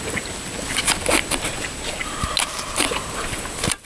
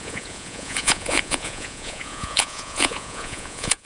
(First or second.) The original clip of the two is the first